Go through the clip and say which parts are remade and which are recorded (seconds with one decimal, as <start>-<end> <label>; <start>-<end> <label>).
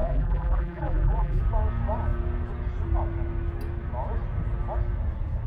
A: 0.0-1.4 remade; 1.4-5.5 recorded